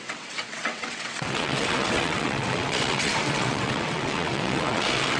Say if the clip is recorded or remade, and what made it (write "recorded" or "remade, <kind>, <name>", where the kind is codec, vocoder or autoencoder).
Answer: remade, vocoder, WaveNeXt